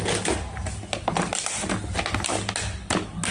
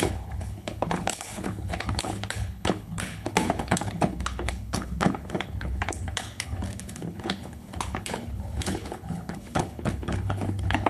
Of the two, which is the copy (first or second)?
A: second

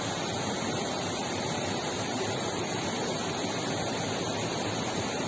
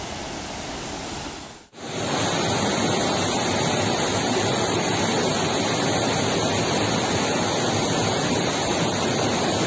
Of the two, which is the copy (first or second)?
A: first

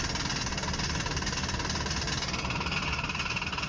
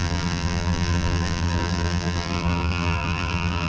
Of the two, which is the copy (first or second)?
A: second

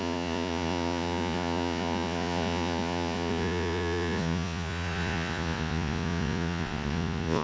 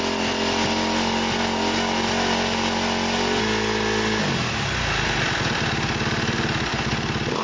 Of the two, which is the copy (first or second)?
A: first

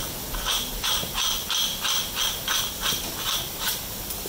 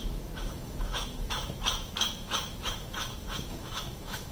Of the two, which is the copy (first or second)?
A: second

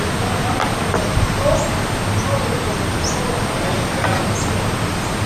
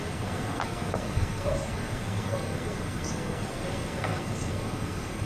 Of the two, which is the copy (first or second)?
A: second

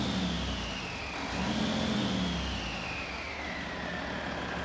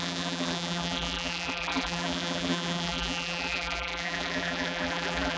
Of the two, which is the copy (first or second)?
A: second